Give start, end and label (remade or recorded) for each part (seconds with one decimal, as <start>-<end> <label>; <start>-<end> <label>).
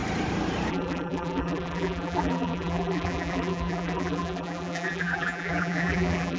0.0-0.7 recorded; 0.7-6.4 remade